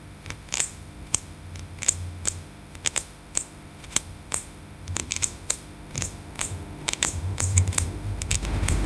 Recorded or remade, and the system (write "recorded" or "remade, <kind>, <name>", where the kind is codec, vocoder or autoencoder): remade, autoencoder, DAC-VAE